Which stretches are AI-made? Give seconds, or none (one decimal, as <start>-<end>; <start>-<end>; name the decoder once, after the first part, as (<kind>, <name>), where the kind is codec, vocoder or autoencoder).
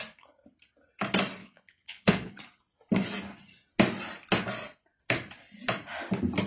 1.4-2.3 (vocoder, Vocos)